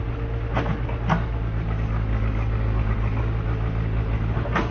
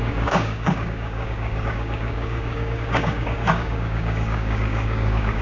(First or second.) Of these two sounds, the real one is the first